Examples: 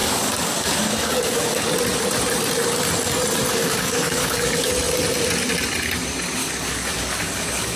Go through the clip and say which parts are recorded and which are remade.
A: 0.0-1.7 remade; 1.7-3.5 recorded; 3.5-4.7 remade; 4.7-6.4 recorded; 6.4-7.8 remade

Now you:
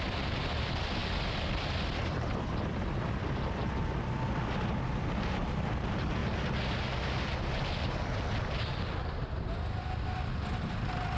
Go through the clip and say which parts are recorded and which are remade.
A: 0.0-11.2 recorded